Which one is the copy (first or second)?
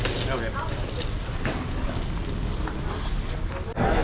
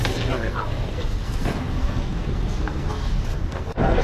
second